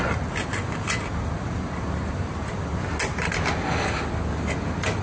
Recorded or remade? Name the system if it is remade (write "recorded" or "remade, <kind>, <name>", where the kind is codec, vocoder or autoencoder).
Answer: recorded